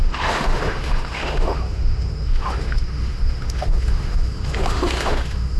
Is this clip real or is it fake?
fake